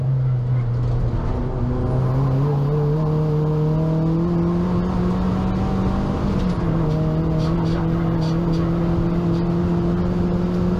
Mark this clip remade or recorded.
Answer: recorded